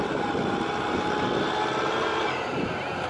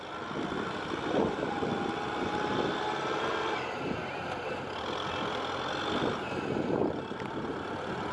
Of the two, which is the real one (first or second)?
first